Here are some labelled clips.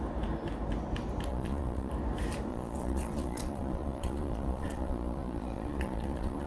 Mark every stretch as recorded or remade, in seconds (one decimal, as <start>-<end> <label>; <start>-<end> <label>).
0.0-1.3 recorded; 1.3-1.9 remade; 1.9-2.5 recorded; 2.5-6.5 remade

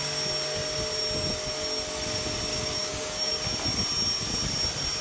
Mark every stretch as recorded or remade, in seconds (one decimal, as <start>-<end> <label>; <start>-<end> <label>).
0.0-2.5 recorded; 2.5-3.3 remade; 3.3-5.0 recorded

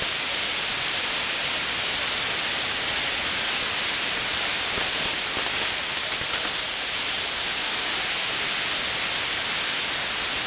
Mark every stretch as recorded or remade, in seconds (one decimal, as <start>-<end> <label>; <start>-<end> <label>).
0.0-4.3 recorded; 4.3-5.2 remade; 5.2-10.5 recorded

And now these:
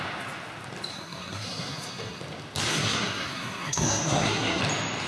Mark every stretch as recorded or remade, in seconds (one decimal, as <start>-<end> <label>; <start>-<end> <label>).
0.0-0.9 recorded; 0.9-2.2 remade; 2.2-2.7 recorded; 2.7-4.6 remade; 4.6-5.1 recorded

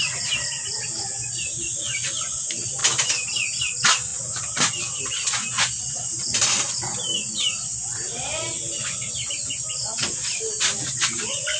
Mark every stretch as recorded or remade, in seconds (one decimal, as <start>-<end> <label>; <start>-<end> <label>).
0.0-11.6 recorded

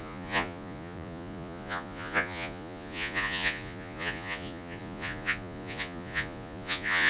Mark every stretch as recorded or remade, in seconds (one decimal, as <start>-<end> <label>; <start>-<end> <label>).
0.0-7.1 remade